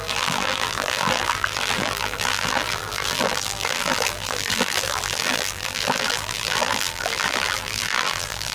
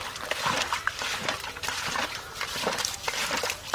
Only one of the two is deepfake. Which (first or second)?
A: first